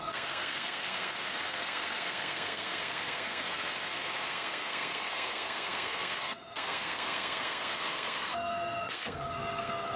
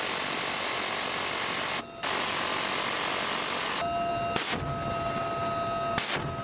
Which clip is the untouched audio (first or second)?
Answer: second